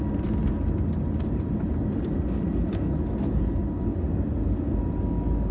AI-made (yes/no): no